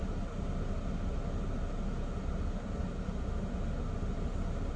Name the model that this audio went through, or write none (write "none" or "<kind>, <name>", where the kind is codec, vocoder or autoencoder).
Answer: none